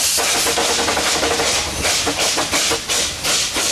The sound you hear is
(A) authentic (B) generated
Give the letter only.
A